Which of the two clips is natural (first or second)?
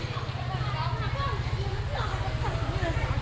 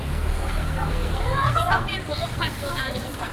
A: first